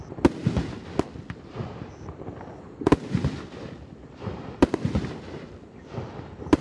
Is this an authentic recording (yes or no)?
yes